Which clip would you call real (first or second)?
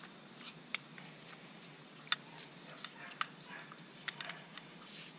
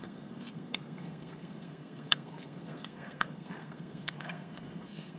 first